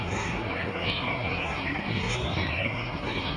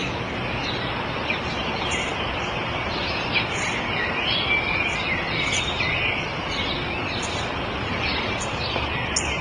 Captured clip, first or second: second